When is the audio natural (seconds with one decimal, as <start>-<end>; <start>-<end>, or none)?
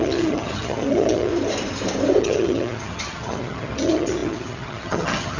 1.3-2.2